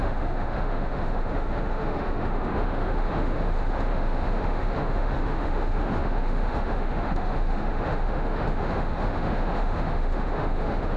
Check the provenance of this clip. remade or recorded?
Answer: remade